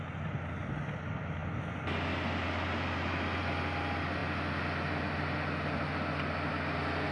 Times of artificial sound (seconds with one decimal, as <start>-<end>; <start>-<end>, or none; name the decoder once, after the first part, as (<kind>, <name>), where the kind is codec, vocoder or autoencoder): none